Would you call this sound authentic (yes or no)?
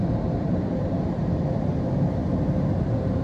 no